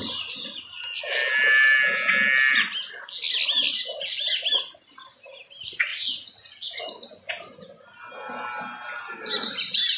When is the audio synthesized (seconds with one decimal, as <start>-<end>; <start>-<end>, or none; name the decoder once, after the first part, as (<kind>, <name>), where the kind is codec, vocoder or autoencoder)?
5.9-6.8 (vocoder, Vocos)